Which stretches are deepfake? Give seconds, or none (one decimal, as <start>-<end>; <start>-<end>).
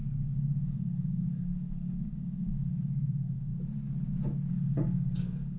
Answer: 0.0-3.5; 4.5-5.6